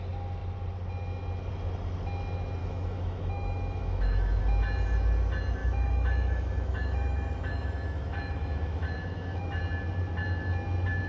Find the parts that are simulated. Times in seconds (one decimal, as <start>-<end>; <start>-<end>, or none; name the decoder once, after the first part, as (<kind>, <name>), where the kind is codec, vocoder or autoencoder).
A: 2.6-4.4 (autoencoder, DAC-VAE); 5.6-9.6